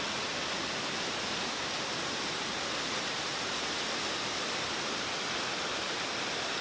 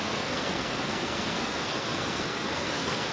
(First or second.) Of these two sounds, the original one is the first